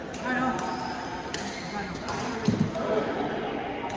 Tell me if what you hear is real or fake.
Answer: real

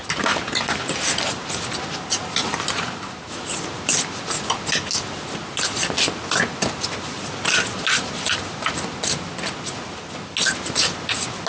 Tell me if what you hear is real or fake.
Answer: real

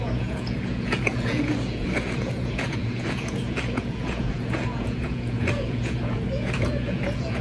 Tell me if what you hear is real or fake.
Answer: fake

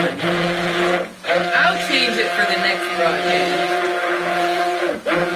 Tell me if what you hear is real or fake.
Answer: fake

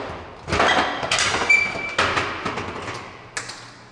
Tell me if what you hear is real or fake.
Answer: real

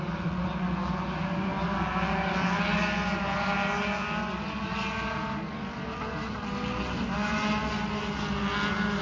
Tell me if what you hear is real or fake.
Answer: real